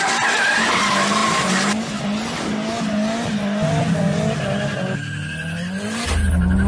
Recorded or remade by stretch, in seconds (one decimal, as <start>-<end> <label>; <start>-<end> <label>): 0.0-6.7 recorded